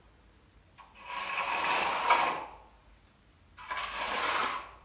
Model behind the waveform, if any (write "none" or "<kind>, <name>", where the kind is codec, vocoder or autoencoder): none